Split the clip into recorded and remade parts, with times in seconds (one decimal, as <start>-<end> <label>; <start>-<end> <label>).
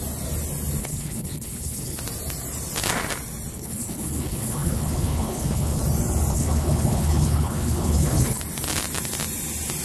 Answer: 0.0-0.8 recorded; 0.8-2.0 remade; 2.0-3.5 recorded; 3.5-5.8 remade; 5.8-6.3 recorded; 6.3-8.4 remade; 8.4-9.8 recorded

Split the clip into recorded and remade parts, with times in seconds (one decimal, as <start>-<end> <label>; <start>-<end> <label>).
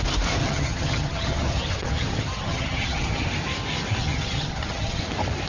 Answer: 0.0-0.4 recorded; 0.4-3.3 remade; 3.3-4.0 recorded; 4.0-5.0 remade; 5.0-5.5 recorded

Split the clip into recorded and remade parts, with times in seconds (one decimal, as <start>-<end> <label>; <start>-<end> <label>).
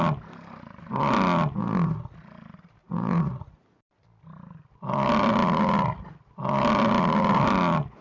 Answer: 0.0-2.8 recorded; 2.8-3.5 remade; 3.5-8.0 recorded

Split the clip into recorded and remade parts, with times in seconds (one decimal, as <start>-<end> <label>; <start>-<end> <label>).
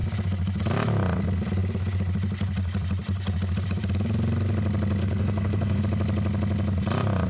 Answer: 0.0-5.0 recorded; 5.0-5.8 remade; 5.8-7.3 recorded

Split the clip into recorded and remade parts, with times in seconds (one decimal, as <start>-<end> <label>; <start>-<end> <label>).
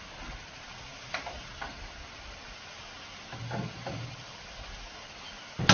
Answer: 0.0-5.7 recorded